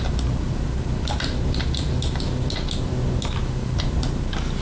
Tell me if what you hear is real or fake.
real